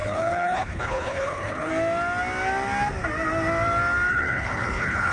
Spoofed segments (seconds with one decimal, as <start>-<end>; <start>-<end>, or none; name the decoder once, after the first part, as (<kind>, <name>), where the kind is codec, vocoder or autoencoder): 0.0-1.7 (codec, HILCodec); 4.1-5.1